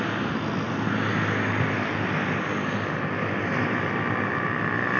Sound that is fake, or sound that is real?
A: real